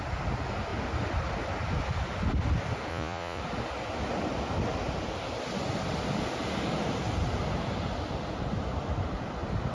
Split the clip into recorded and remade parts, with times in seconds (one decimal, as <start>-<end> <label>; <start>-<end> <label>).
0.0-2.9 recorded; 2.9-3.4 remade; 3.4-9.7 recorded